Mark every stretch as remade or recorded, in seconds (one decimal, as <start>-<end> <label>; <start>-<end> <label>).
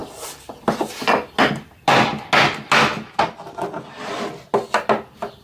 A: 0.0-5.4 recorded